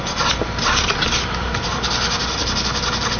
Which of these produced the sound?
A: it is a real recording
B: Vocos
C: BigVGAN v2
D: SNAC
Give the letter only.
C